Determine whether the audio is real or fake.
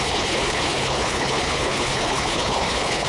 fake